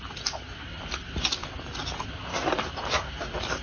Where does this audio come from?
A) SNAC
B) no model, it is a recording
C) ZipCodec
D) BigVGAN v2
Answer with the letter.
B